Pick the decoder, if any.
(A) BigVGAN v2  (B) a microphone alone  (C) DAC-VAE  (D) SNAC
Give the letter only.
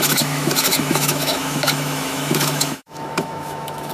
C